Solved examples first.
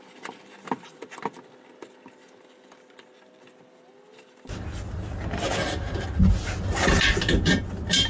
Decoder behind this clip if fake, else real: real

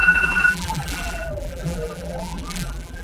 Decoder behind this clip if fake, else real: fake, vocoder, BigVGAN v2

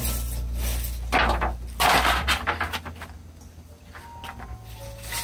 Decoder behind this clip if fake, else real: real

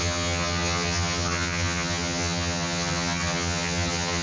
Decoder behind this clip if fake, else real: fake, vocoder, HiFi-GAN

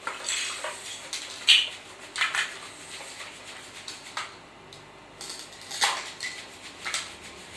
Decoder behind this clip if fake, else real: real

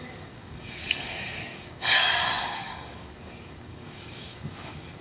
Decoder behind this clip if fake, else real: fake, codec, DAC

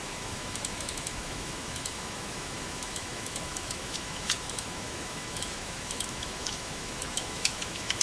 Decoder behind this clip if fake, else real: fake, autoencoder, DAC-VAE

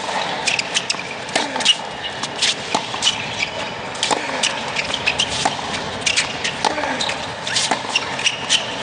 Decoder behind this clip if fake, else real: real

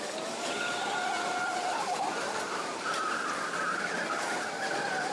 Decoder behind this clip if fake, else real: real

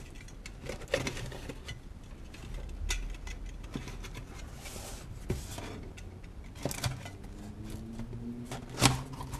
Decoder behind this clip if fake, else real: real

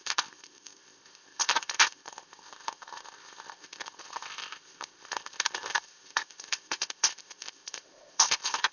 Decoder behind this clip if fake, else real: fake, codec, ZipCodec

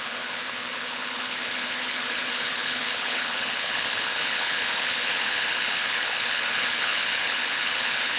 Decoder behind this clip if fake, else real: fake, codec, HILCodec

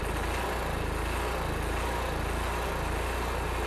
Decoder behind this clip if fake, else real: real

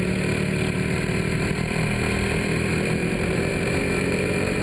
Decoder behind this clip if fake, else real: fake, vocoder, BigVGAN v2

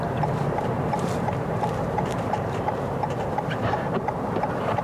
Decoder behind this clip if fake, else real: fake, vocoder, BigVGAN v2